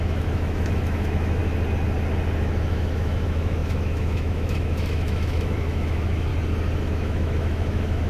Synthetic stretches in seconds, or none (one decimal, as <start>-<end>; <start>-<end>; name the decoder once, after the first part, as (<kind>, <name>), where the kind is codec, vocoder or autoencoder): 0.0-1.4 (autoencoder, DAC-VAE); 2.4-6.3; 6.8-8.1